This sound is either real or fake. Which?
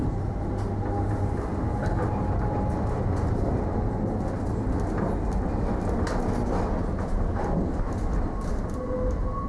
real